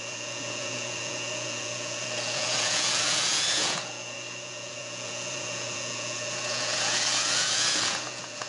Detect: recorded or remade remade